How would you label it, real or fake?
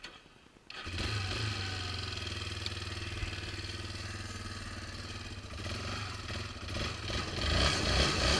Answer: real